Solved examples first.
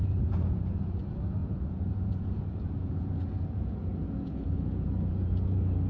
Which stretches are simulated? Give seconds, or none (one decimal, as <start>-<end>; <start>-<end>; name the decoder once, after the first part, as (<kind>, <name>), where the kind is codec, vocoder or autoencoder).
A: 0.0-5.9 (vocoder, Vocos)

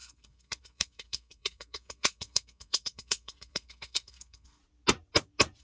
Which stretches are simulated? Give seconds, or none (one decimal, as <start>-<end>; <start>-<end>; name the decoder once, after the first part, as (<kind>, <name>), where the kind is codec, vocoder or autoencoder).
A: 0.0-4.6 (codec, SNAC)

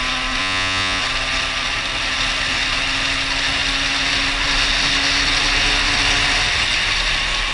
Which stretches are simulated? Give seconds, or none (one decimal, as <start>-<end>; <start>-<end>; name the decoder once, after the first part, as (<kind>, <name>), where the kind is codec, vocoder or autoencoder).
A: 0.4-1.0 (vocoder, Vocos)

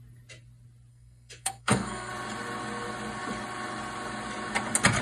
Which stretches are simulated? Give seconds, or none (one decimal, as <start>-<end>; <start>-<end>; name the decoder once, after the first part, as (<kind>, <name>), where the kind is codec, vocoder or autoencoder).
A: 0.9-2.1 (codec, SNAC)

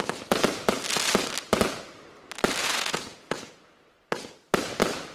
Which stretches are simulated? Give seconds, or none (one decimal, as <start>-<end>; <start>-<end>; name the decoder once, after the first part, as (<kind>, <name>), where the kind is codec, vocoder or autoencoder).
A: 2.6-3.4 (vocoder, Vocos)